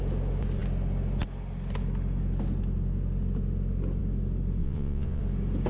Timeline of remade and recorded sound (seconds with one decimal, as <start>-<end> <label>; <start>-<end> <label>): 0.0-4.6 recorded; 4.6-5.2 remade; 5.2-5.7 recorded